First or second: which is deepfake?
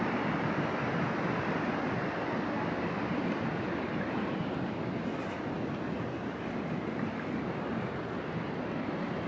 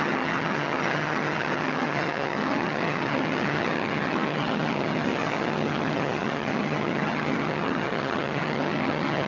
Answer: second